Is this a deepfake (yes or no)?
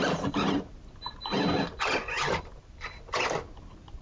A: no